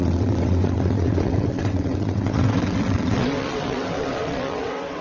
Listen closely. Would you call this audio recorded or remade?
remade